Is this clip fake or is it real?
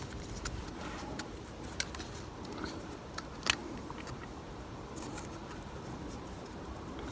real